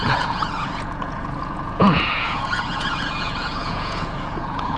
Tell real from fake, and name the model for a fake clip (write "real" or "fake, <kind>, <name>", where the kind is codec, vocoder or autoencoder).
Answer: fake, vocoder, Vocos